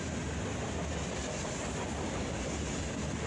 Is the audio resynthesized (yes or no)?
no